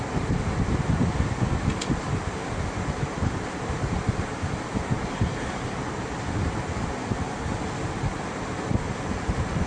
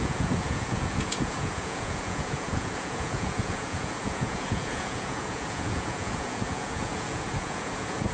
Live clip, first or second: first